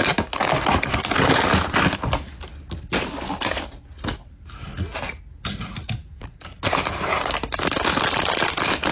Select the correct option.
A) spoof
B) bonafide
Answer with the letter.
B